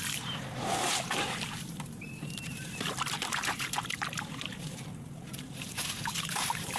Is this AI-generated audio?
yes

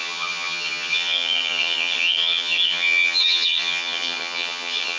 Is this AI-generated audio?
yes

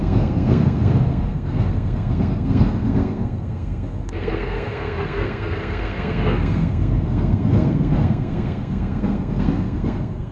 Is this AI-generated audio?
yes